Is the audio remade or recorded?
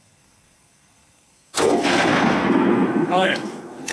remade